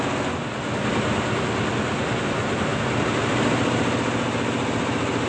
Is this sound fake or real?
real